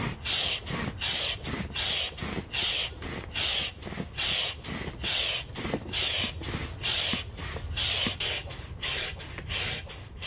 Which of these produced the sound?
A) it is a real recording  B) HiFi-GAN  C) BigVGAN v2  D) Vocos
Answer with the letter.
C